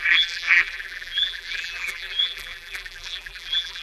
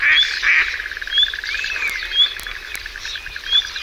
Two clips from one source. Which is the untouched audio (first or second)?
second